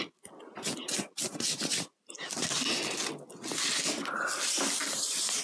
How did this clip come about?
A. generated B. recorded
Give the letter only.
B